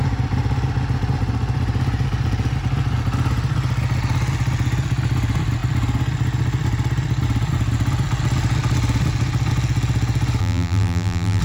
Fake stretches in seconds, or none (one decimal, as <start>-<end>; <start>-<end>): 10.4-11.4